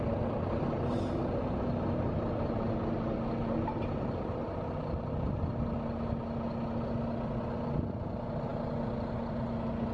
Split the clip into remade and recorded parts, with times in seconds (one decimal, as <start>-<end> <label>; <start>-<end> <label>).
0.0-9.9 recorded